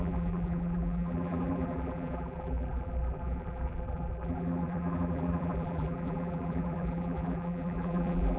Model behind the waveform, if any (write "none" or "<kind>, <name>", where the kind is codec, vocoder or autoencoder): vocoder, BigVGAN v2